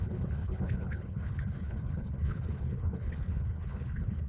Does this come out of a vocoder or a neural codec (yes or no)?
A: yes